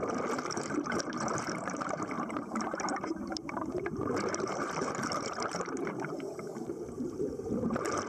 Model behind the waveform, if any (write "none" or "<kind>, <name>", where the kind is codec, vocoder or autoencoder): vocoder, BigVGAN v2